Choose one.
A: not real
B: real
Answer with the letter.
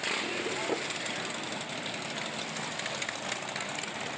B